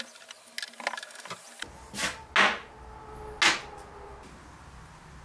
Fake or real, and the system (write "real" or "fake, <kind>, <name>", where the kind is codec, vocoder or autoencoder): real